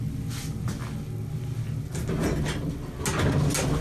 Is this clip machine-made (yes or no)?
no